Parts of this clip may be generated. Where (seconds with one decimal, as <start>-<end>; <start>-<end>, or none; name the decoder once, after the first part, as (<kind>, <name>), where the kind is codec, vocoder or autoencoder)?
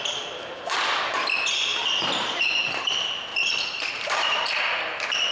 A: 1.7-2.4 (vocoder, BigVGAN v2); 3.3-4.6